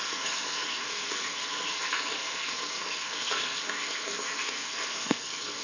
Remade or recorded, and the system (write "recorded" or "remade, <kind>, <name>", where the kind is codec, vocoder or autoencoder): remade, codec, SNAC